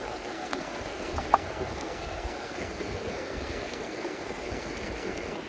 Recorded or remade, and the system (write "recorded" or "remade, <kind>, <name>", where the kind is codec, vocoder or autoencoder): remade, codec, SNAC